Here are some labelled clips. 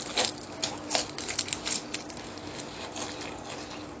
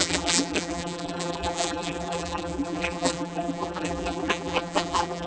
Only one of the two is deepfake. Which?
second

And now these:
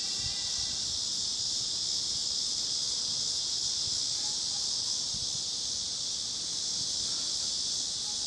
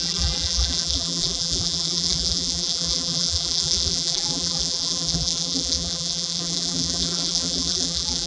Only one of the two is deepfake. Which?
second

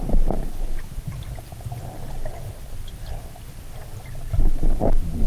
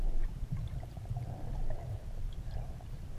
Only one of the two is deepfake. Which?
second